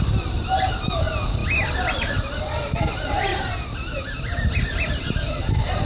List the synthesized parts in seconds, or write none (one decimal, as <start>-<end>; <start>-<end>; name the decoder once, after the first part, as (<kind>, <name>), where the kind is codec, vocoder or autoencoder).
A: none